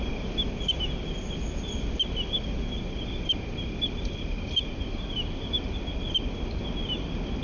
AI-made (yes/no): no